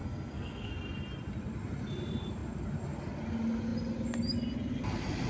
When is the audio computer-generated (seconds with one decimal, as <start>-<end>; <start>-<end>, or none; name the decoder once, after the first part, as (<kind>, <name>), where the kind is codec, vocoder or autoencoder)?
0.0-0.7 (codec, SNAC)